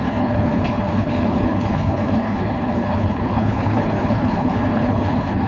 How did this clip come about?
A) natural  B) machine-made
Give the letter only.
B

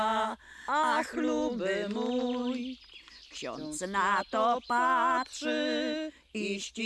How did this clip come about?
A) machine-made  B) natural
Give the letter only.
B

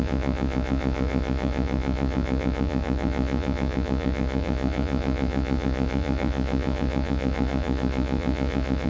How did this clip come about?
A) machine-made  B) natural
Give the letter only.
A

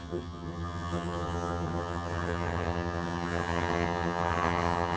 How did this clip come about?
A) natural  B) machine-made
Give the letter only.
B